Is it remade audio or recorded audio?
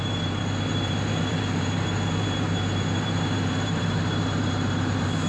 remade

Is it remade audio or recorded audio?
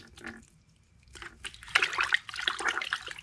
recorded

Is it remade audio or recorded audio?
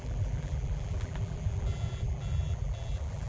remade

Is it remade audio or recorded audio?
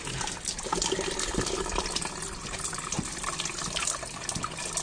recorded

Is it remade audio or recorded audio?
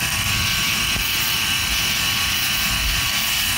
remade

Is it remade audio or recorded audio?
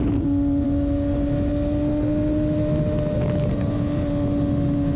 recorded